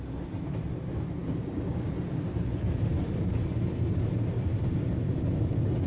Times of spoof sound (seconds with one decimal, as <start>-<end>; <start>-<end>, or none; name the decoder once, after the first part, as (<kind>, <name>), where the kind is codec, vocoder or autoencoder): 1.2-1.9 (codec, DAC)